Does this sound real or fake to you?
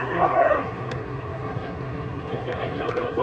fake